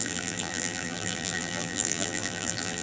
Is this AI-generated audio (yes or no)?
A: yes